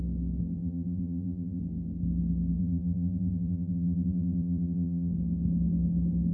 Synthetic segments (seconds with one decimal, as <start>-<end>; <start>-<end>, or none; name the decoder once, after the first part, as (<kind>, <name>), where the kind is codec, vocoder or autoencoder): 0.6-1.6 (vocoder, BigVGAN v2); 2.6-5.1